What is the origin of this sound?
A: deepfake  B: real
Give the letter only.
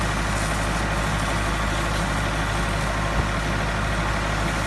B